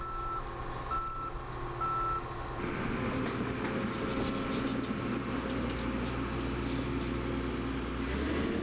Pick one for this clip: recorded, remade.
recorded